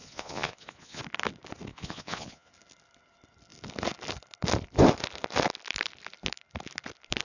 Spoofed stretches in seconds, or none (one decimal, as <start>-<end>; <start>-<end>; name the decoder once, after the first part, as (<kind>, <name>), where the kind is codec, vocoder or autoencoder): 0.0-1.0 (vocoder, Vocos); 1.7-2.5